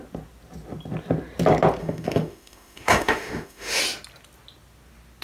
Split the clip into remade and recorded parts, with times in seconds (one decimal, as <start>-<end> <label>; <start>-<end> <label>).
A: 0.0-1.8 recorded; 1.8-3.8 remade; 3.8-5.2 recorded